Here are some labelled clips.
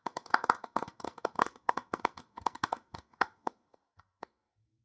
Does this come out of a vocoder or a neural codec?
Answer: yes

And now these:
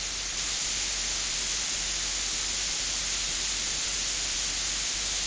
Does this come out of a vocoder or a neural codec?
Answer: no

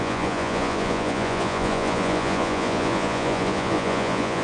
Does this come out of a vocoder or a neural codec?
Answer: yes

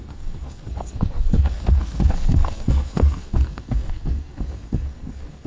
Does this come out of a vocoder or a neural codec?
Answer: yes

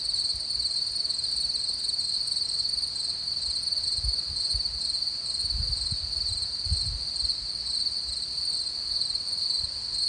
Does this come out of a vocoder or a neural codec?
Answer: no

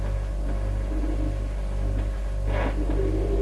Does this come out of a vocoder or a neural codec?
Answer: no